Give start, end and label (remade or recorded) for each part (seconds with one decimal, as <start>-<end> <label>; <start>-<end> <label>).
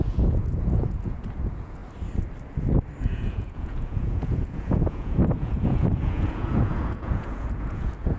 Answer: 0.0-1.8 remade; 1.8-3.0 recorded; 3.0-8.2 remade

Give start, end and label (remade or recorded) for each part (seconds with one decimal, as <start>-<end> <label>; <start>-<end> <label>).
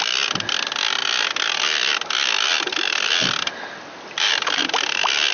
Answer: 0.0-5.3 recorded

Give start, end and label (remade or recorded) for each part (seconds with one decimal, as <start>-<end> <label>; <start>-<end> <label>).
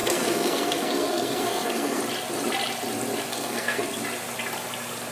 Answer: 0.0-2.0 remade; 2.0-3.3 recorded; 3.3-4.0 remade; 4.0-5.1 recorded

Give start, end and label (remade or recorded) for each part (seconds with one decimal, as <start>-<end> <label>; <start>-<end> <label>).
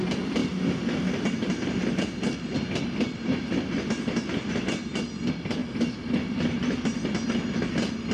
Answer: 0.0-8.1 recorded